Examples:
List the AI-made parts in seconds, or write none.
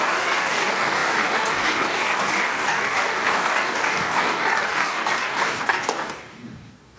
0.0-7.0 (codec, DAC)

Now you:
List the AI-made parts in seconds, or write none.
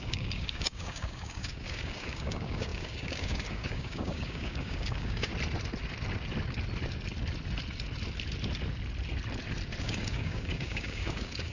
0.0-5.3 (codec, DAC); 9.8-11.5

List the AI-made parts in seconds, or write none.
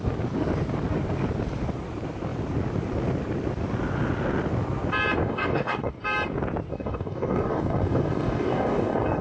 5.2-5.9 (codec, DAC); 6.7-9.2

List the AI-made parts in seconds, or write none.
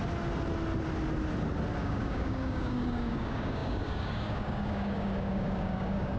1.8-6.2 (codec, DAC)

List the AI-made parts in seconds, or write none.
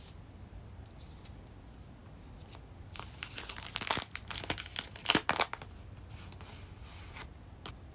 none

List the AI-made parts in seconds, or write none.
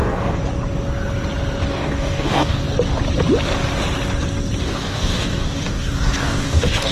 0.0-0.4 (codec, DAC); 1.7-2.6; 4.6-6.9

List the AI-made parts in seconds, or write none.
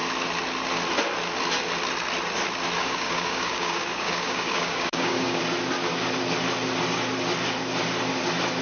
2.8-5.4 (codec, DAC)